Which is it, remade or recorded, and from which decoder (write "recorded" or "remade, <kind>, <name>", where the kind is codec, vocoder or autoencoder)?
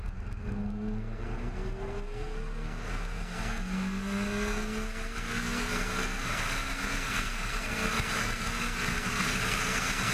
remade, codec, SNAC